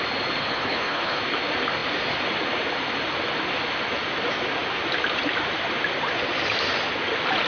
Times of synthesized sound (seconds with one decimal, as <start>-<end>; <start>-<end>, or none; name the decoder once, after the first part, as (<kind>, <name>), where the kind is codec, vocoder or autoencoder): 0.4-1.2 (codec, HILCodec)